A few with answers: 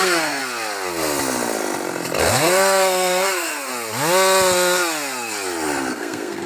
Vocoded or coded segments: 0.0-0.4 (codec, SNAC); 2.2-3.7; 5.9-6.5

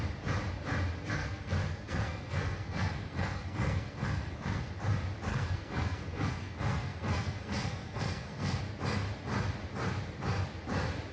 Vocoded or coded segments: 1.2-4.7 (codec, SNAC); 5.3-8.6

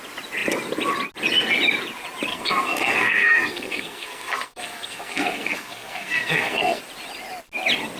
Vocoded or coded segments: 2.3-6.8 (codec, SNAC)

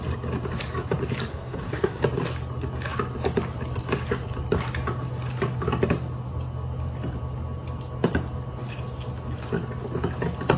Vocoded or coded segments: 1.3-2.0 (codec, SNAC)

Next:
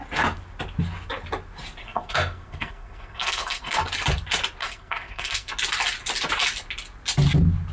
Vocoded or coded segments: 1.8-3.8 (codec, SNAC); 4.6-5.5

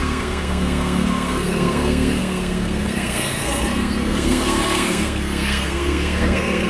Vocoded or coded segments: 0.0-6.7 (codec, SNAC)

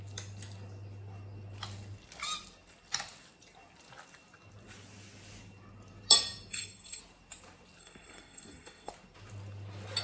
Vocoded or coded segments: 6.5-7.0 (codec, SNAC); 7.8-8.9